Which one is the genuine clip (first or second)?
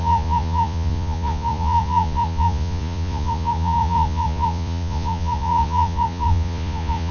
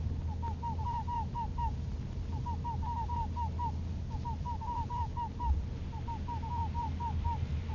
second